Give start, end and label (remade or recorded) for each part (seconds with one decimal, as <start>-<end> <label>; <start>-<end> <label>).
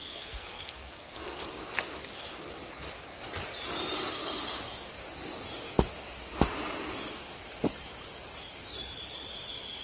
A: 0.0-1.4 remade; 1.4-9.8 recorded